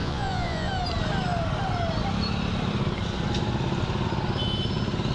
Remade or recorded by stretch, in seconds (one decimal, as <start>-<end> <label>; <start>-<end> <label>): 0.0-0.7 remade; 0.7-5.1 recorded